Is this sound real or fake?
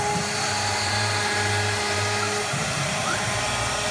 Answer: fake